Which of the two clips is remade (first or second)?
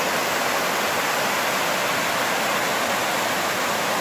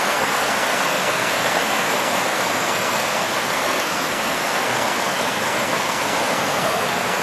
second